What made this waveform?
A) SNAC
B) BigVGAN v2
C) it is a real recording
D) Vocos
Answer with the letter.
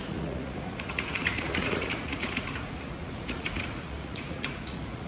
D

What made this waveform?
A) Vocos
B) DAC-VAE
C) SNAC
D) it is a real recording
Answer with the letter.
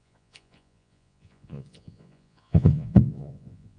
A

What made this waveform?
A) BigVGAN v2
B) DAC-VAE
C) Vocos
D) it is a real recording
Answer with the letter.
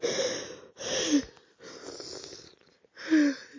D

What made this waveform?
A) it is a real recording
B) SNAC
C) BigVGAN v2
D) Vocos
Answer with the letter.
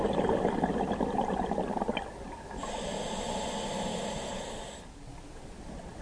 A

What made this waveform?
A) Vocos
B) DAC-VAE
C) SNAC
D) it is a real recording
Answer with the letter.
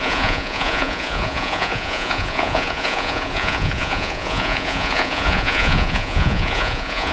A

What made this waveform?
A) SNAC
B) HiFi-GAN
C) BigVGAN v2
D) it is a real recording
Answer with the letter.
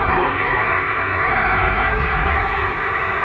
A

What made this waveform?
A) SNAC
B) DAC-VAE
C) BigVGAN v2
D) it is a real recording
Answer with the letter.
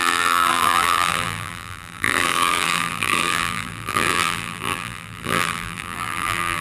C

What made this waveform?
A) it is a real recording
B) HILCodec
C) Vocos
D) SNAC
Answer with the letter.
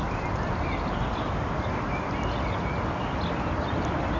A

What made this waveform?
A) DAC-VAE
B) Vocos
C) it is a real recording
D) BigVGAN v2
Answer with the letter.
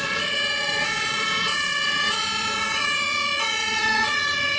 B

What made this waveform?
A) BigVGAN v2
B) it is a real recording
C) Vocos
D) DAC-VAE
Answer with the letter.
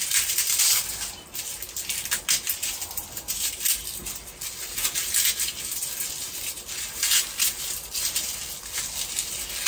B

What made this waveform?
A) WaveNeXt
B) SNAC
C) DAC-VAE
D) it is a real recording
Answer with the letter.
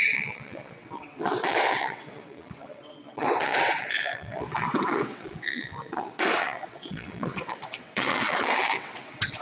A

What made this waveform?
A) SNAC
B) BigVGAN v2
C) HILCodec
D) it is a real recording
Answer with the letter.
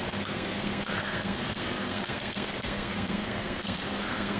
A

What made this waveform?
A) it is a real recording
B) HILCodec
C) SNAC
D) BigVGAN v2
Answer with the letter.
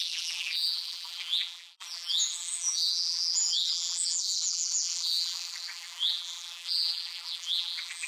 D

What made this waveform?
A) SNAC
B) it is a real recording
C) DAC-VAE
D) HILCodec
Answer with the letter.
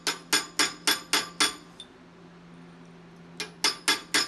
B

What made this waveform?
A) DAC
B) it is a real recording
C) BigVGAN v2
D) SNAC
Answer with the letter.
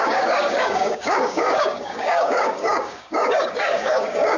A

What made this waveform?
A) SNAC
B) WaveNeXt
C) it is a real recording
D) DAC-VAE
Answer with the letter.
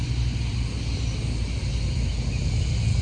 C